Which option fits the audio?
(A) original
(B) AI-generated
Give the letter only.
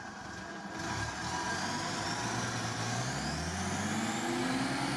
A